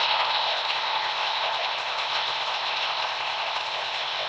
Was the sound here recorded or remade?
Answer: remade